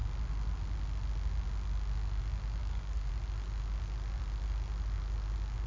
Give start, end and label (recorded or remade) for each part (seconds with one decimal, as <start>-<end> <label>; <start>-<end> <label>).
0.0-2.6 recorded; 2.6-3.1 remade; 3.1-5.7 recorded